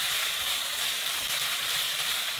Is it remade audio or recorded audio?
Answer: remade